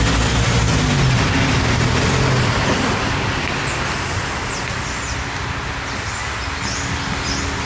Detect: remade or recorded recorded